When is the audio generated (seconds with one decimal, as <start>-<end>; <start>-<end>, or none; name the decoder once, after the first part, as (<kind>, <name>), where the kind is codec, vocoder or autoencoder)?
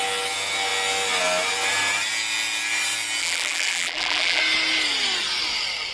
3.2-4.4 (vocoder, BigVGAN v2)